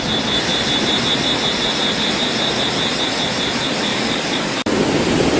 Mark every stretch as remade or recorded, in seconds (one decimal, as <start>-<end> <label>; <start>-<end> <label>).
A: 0.0-3.9 recorded; 3.9-4.8 remade; 4.8-5.4 recorded